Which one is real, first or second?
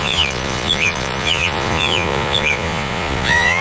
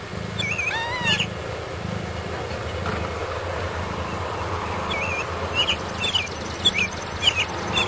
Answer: second